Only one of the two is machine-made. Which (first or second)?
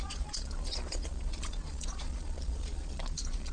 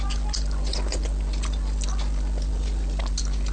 first